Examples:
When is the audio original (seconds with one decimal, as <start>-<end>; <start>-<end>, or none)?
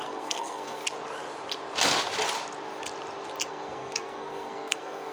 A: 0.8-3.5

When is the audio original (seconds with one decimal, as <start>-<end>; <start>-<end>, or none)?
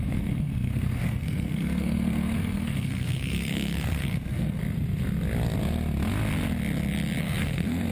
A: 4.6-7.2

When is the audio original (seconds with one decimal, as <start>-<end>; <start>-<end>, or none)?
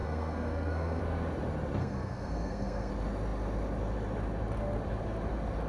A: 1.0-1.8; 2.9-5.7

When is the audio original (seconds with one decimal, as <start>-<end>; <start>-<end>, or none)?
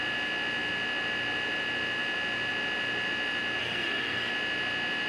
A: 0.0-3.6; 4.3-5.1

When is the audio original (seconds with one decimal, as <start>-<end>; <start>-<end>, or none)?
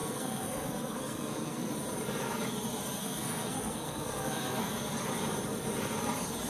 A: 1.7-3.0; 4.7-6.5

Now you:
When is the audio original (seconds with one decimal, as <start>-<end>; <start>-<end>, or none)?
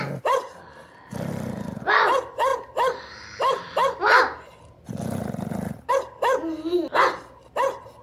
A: 0.0-8.0